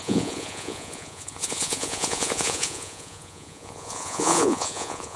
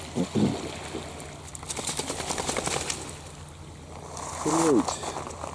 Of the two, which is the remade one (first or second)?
first